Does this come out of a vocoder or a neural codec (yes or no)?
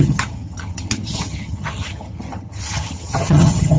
yes